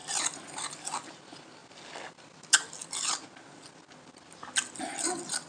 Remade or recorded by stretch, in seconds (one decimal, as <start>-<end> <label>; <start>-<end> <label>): 0.0-5.5 recorded

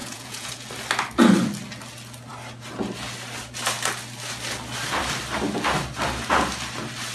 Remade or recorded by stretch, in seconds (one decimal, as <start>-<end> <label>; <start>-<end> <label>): 0.0-0.7 remade; 0.7-7.1 recorded

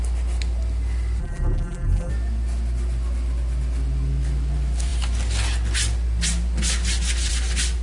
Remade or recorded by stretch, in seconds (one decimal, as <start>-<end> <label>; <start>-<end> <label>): 0.0-1.2 recorded; 1.2-2.1 remade; 2.1-7.8 recorded

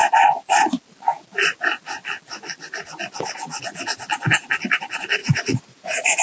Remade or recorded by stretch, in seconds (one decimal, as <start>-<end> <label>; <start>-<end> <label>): 0.0-5.2 recorded; 5.2-6.2 remade